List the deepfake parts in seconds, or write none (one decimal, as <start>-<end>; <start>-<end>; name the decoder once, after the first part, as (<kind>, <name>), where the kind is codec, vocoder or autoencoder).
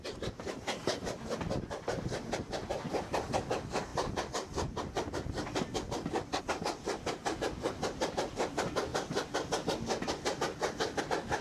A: none